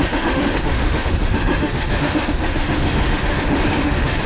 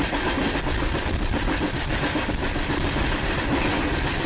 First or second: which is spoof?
first